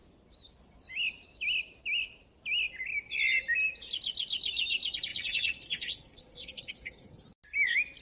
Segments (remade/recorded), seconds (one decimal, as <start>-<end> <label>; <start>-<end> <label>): 0.0-5.1 recorded; 5.1-7.1 remade; 7.1-8.0 recorded